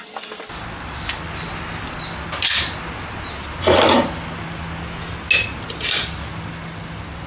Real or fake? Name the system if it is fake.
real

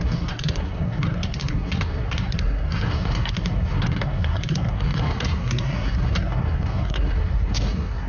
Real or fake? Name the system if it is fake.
fake, codec, SNAC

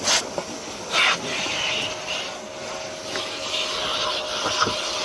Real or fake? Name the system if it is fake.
real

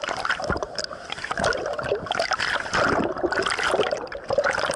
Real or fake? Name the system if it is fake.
real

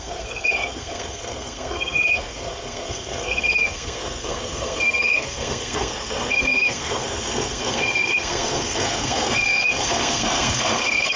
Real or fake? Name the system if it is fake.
fake, codec, SNAC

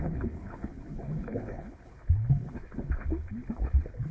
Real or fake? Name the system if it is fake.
fake, codec, HILCodec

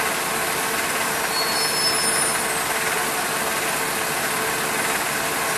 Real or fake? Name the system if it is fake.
real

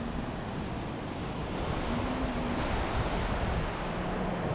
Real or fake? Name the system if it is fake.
real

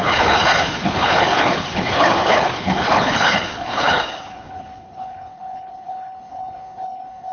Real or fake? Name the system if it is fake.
fake, codec, HILCodec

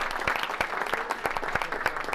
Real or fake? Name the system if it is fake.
real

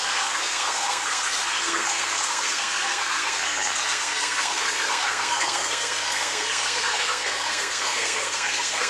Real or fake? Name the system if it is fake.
fake, codec, SNAC